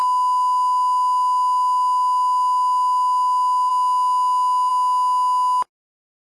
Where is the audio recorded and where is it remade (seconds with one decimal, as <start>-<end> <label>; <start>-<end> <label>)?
0.0-3.7 remade; 3.7-6.2 recorded